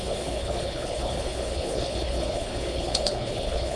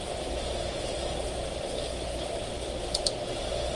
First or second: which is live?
second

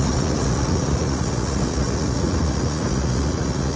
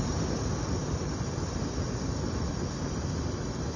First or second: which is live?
second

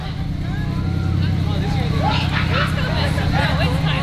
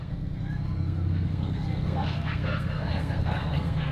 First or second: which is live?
first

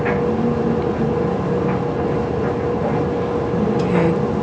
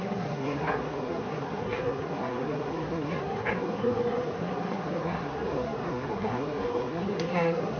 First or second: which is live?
first